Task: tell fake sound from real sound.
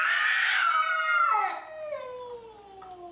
fake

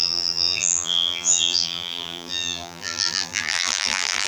fake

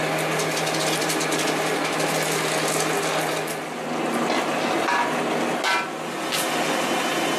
real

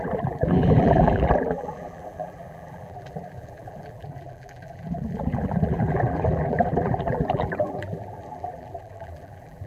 fake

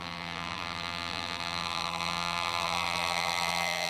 fake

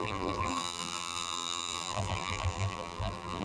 fake